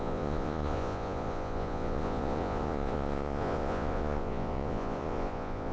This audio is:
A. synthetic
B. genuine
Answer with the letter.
A